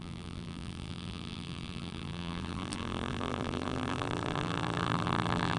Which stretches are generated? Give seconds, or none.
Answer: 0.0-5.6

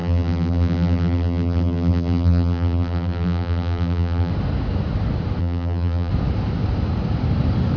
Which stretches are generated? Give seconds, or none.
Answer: 0.0-4.3; 5.4-6.1